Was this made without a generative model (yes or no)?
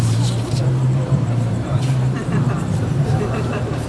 no